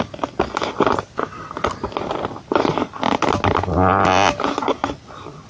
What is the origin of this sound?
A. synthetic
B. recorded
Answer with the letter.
B